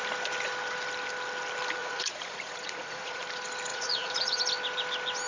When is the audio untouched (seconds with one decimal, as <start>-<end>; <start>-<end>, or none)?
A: 0.0-1.8; 3.2-3.7; 4.4-5.3